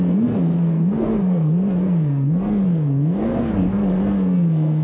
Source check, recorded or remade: remade